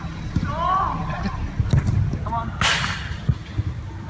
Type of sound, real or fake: real